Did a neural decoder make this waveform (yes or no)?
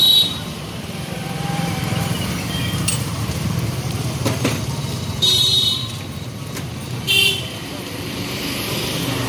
yes